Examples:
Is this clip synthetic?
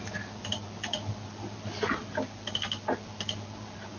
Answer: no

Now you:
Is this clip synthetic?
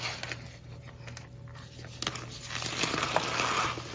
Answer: no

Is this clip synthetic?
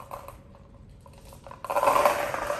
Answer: no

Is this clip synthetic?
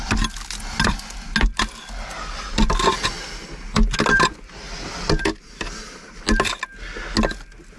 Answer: no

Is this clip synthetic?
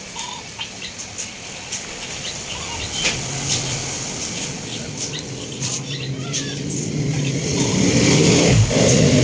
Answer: no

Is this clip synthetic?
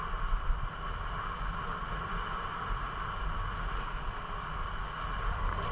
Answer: no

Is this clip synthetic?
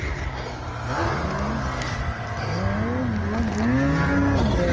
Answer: no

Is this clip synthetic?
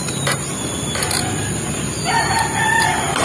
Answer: no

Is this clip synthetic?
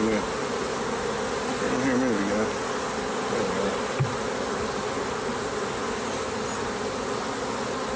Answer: no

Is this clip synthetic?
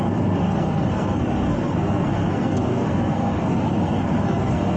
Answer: yes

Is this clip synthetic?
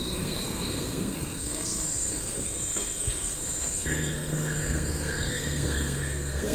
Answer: yes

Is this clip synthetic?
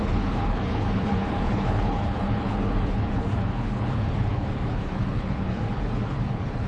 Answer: yes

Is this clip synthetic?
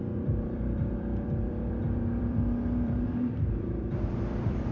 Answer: yes